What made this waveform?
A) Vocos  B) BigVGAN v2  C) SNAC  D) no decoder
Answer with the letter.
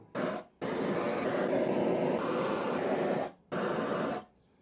D